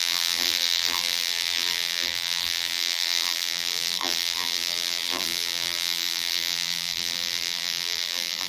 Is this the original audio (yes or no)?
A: no